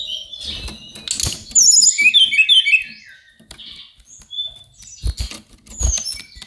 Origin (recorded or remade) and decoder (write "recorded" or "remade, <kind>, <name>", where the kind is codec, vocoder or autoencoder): recorded